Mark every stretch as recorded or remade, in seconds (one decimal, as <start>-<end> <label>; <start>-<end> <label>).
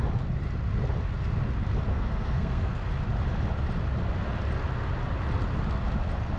0.0-1.9 recorded; 1.9-2.9 remade; 2.9-6.4 recorded